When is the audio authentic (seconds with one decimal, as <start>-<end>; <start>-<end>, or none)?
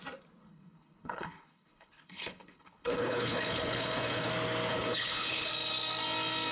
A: 0.0-0.4; 4.3-4.7; 5.5-6.5